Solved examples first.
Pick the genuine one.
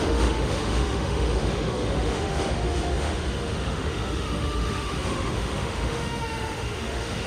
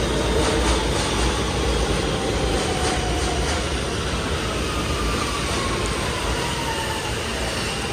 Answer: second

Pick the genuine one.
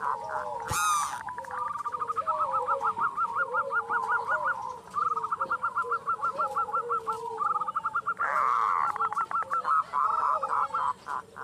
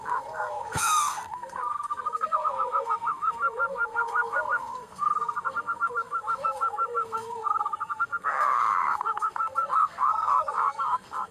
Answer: first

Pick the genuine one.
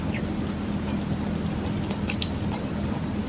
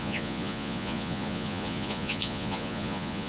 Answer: first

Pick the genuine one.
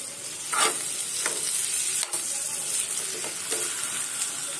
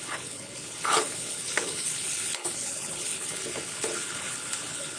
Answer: first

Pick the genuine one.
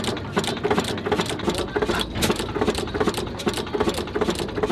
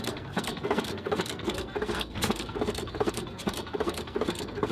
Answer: first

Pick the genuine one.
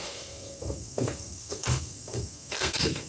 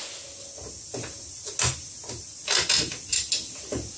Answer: second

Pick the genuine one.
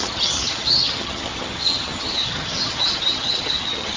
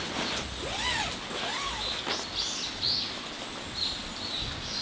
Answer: second